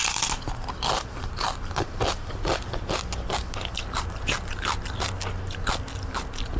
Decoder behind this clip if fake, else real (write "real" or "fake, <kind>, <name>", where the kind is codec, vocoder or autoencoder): real